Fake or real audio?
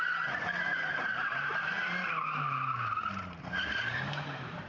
fake